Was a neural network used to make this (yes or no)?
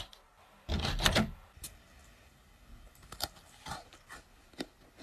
no